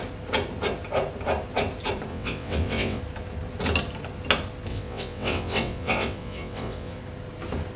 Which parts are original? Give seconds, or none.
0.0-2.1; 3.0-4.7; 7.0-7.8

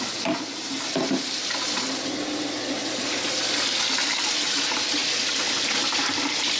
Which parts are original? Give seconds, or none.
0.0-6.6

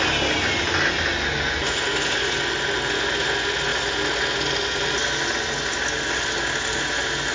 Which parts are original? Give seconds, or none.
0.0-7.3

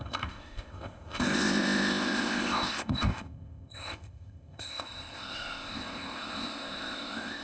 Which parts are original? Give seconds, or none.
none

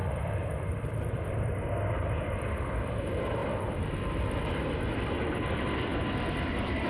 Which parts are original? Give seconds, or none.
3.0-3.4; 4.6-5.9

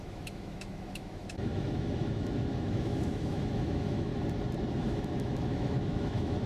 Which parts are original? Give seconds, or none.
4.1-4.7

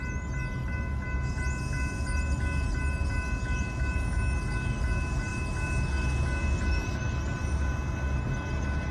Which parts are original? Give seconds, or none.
0.0-8.9

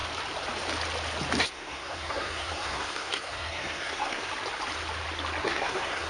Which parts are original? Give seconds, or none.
0.0-1.4; 4.2-5.4